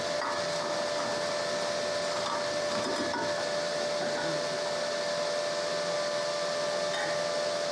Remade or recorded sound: recorded